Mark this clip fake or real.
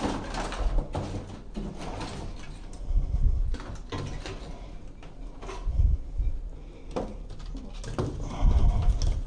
real